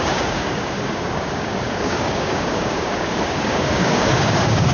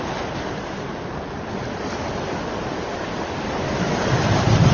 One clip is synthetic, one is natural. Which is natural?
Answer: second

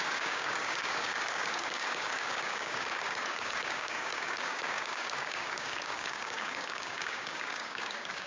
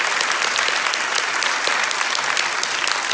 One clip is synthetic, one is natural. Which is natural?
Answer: second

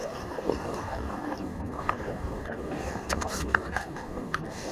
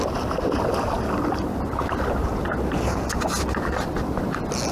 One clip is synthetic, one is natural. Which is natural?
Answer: second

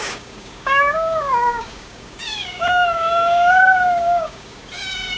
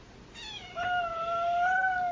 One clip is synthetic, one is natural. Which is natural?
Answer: second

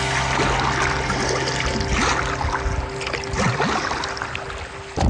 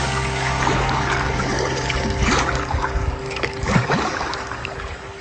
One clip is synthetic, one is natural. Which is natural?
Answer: first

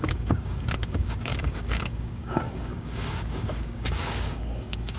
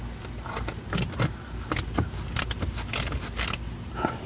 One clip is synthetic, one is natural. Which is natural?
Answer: second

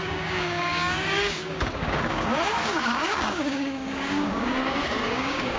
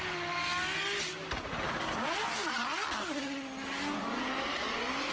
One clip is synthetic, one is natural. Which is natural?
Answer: second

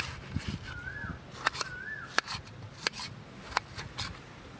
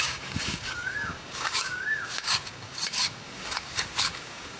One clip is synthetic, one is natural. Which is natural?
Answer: first